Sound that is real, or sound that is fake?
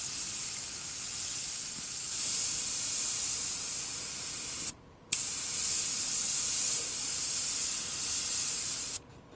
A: real